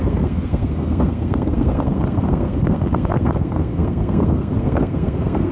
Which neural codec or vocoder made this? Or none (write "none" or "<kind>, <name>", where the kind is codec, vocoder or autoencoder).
codec, SNAC